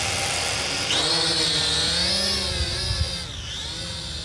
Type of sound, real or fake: real